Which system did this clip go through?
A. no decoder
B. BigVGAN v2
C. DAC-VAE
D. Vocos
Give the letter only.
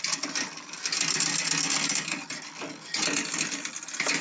A